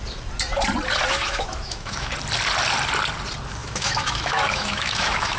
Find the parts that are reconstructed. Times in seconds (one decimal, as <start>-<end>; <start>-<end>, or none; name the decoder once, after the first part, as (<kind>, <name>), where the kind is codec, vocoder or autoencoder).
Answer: 1.1-2.1 (autoencoder, DAC-VAE); 3.6-5.4